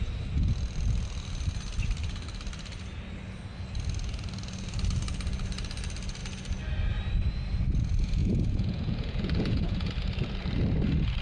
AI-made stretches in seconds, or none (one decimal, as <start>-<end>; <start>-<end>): 8.2-9.9